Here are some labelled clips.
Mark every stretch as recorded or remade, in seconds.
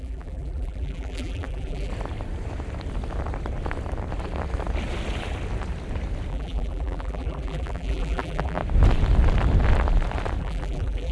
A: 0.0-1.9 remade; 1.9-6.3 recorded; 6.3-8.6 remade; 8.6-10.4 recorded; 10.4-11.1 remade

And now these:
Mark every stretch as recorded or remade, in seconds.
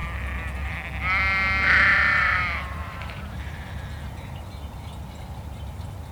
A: 0.0-1.9 recorded; 1.9-3.7 remade; 3.7-6.1 recorded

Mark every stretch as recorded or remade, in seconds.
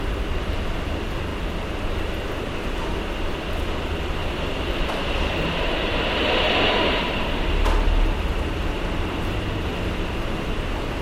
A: 0.0-4.2 recorded; 4.2-6.9 remade; 6.9-11.0 recorded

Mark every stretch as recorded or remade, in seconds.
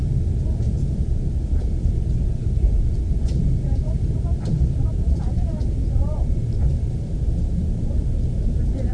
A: 0.0-8.9 remade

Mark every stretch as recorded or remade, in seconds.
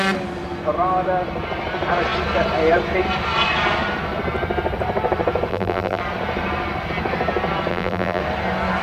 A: 0.0-5.5 recorded; 5.5-6.0 remade; 6.0-7.7 recorded; 7.7-8.2 remade; 8.2-8.8 recorded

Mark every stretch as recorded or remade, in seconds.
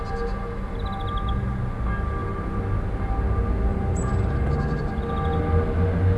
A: 0.0-3.7 recorded; 3.7-4.9 remade; 4.9-6.2 recorded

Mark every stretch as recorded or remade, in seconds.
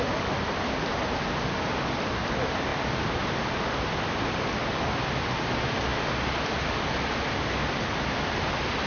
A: 0.0-2.7 recorded; 2.7-3.2 remade; 3.2-8.9 recorded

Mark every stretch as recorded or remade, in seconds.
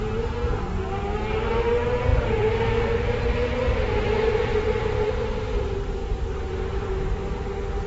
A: 0.0-2.1 recorded; 2.1-5.1 remade; 5.1-6.0 recorded; 6.0-7.4 remade; 7.4-7.9 recorded